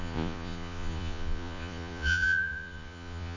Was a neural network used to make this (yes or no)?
yes